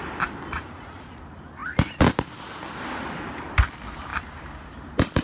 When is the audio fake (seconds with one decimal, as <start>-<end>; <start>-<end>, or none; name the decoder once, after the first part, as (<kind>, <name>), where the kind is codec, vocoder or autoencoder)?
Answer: 0.5-1.2 (vocoder, Vocos)

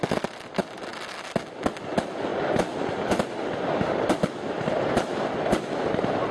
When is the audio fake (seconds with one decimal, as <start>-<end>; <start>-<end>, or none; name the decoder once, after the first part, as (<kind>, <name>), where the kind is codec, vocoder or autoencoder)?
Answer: 2.3-6.3 (vocoder, BigVGAN v2)

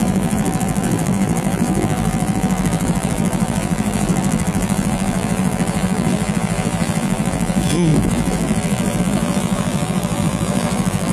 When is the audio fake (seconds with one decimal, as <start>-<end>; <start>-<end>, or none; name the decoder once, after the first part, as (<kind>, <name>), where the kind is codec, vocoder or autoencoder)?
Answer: 0.0-11.1 (vocoder, BigVGAN v2)

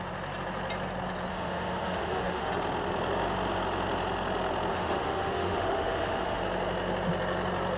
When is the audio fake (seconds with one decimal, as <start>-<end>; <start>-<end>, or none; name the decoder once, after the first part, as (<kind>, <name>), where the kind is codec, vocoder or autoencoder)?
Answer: 1.3-2.5 (autoencoder, DAC-VAE); 4.7-6.4

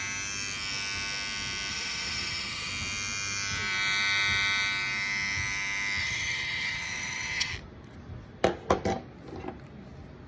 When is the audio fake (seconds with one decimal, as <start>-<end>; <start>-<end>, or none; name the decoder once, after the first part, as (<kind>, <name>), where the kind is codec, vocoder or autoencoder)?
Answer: 1.7-2.7 (vocoder, HiFi-GAN); 6.0-7.5

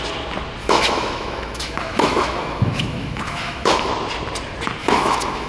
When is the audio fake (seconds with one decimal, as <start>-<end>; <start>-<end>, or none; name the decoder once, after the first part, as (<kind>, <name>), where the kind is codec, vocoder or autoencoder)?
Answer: 0.6-3.9 (autoencoder, DAC-VAE); 4.8-5.5

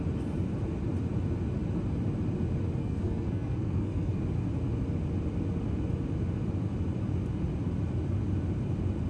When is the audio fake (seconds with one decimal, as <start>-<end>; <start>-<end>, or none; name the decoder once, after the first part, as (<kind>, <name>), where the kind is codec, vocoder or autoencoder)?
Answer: 2.8-4.2 (codec, SNAC)